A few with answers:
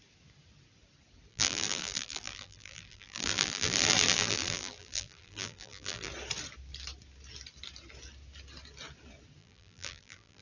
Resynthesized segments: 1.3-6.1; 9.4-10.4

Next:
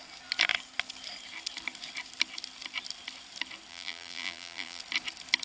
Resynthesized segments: 3.7-4.8

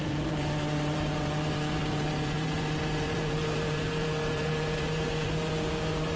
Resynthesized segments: 0.0-6.2

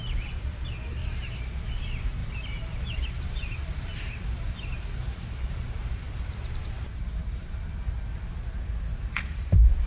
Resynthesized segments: 1.0-1.8; 2.2-6.2; 7.2-7.9; 8.9-9.4

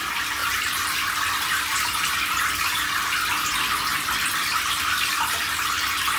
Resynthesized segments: 0.4-3.9

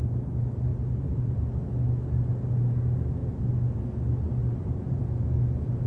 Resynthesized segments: 0.7-1.4; 4.4-5.0

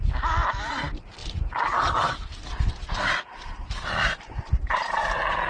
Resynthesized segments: 1.2-4.5